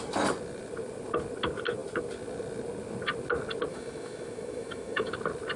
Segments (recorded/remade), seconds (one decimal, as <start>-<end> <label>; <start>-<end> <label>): 0.0-3.7 recorded; 3.7-5.1 remade; 5.1-5.6 recorded